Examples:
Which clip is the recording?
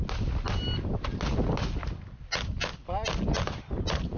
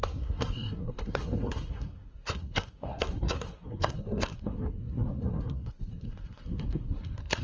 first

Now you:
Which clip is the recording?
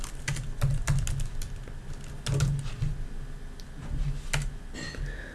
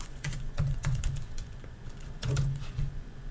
first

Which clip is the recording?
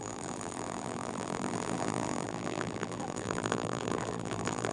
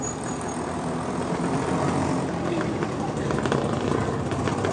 second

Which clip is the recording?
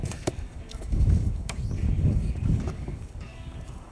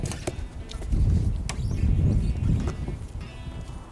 second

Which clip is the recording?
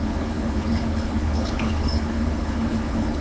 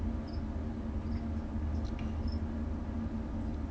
second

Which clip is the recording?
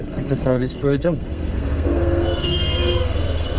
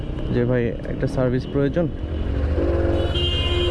second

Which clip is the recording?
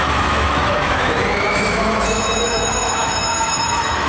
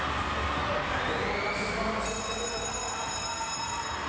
second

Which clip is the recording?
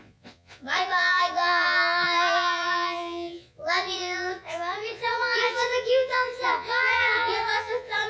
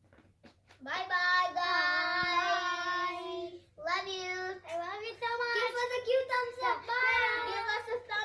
second